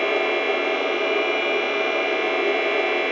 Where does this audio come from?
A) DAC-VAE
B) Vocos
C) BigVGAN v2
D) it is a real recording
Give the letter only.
D